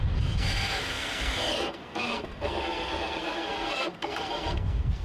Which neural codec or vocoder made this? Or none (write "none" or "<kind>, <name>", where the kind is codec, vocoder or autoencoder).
codec, SNAC